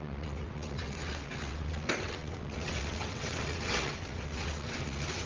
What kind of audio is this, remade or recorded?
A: remade